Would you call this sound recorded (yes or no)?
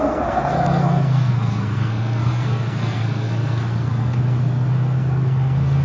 no